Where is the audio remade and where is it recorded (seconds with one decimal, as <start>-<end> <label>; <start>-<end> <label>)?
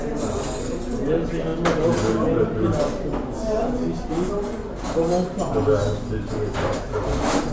0.0-7.5 recorded